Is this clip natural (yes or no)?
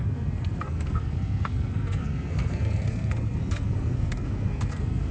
no